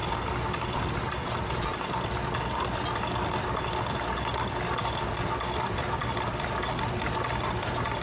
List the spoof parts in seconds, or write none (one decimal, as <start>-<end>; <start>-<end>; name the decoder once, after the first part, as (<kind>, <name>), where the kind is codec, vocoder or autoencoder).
none